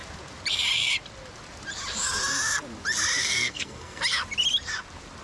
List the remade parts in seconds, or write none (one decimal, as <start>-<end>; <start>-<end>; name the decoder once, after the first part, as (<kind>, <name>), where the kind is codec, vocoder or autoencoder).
3.2-4.0 (codec, SNAC)